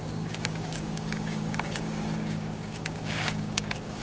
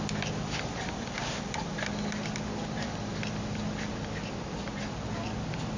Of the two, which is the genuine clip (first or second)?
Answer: second